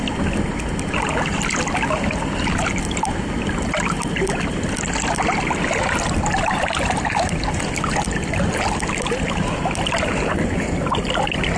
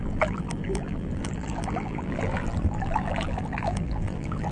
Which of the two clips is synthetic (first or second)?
second